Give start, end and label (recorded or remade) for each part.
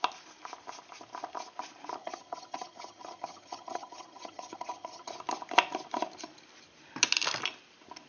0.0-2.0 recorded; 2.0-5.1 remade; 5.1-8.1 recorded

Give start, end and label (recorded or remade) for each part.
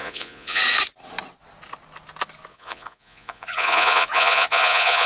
0.0-0.6 remade; 0.6-2.5 recorded; 2.5-5.1 remade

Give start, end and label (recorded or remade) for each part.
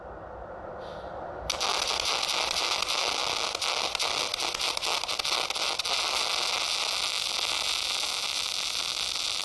0.0-9.4 recorded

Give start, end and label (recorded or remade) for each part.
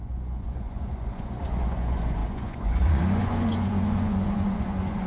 0.0-5.1 remade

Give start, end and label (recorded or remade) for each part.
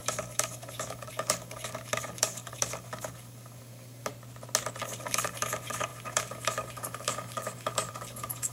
0.0-4.1 remade; 4.1-4.8 recorded; 4.8-8.5 remade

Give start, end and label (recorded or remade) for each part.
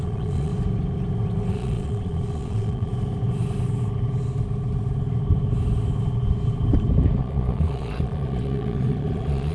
0.0-0.5 remade; 0.5-1.5 recorded; 1.5-2.9 remade; 2.9-7.2 recorded; 7.2-9.5 remade